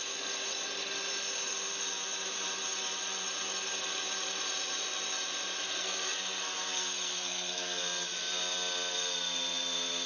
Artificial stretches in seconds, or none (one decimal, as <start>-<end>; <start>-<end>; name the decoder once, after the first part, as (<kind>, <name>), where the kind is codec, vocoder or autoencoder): 5.6-7.8 (codec, SNAC)